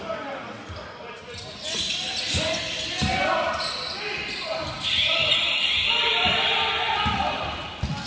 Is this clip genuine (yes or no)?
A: yes